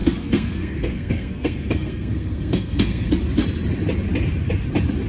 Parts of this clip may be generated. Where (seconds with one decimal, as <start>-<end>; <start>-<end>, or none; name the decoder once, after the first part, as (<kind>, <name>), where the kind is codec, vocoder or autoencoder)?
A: 0.0-3.1 (codec, SNAC)